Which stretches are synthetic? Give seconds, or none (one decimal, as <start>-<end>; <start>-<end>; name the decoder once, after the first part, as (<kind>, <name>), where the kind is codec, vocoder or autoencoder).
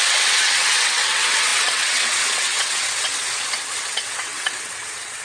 0.0-5.2 (vocoder, WaveNeXt)